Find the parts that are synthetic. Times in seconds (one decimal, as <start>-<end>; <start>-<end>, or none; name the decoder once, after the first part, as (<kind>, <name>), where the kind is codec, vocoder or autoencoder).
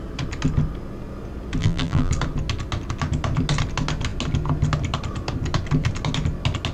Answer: 1.6-2.1 (vocoder, BigVGAN v2)